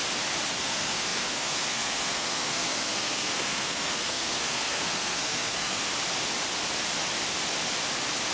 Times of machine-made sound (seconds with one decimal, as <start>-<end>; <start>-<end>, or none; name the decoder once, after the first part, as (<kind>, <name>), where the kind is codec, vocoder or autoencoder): 0.6-5.9 (codec, SNAC)